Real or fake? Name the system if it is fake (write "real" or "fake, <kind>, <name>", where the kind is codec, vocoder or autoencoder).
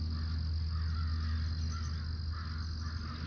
real